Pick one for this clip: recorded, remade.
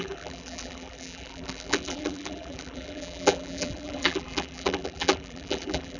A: remade